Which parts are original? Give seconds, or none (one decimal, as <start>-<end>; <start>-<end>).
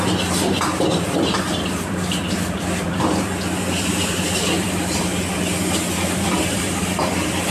5.1-6.3